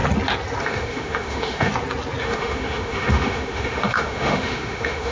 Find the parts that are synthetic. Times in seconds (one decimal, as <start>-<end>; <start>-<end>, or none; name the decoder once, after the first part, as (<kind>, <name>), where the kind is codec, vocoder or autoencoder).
0.6-1.7 (autoencoder, DAC-VAE); 2.2-5.1